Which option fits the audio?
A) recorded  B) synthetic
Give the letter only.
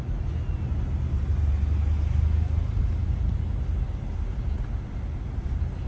A